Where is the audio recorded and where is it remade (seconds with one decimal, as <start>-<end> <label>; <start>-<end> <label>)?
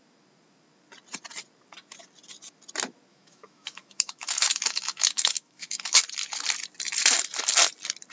0.0-3.1 recorded; 3.1-6.0 remade; 6.0-8.1 recorded